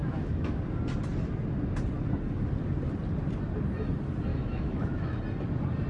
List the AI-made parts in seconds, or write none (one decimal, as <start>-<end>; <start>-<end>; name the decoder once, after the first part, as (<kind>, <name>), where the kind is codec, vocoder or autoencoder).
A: 0.0-0.6 (autoencoder, DAC-VAE); 4.3-5.2